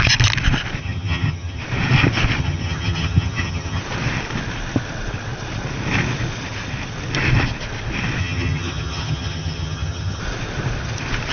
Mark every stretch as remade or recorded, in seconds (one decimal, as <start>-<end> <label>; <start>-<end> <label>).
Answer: 0.0-0.8 recorded; 0.8-1.6 remade; 1.6-2.4 recorded; 2.4-3.8 remade; 3.8-8.2 recorded; 8.2-10.2 remade; 10.2-11.3 recorded